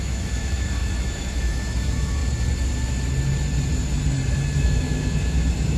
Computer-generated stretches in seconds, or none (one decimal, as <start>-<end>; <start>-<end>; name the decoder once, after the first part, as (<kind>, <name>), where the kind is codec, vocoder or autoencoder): 0.0-2.2 (autoencoder, DAC-VAE); 4.6-5.8

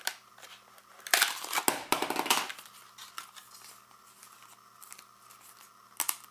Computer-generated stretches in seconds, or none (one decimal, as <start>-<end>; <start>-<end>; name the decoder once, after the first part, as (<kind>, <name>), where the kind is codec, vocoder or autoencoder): none

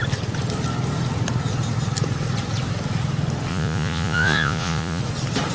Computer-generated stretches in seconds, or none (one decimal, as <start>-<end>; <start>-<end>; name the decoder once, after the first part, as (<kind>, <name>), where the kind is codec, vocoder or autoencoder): 3.5-5.0 (vocoder, Vocos)

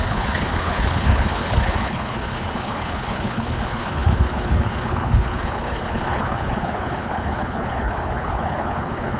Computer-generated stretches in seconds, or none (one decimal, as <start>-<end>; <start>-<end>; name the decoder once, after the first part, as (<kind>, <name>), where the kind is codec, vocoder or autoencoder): 0.0-9.2 (codec, HILCodec)